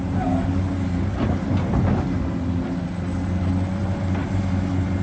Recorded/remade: recorded